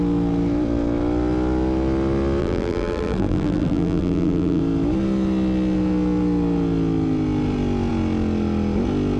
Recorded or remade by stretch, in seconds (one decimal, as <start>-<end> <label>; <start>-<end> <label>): 0.0-2.4 recorded; 2.4-4.6 remade; 4.6-9.2 recorded